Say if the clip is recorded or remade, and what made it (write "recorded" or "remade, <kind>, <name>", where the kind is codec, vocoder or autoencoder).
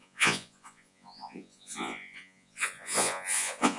remade, vocoder, Vocos